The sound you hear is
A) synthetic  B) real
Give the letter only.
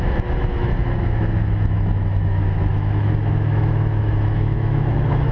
A